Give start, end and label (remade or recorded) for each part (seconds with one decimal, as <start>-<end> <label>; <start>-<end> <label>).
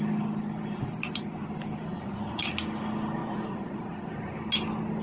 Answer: 0.0-1.9 recorded; 1.9-2.5 remade; 2.5-3.2 recorded; 3.2-4.0 remade; 4.0-5.0 recorded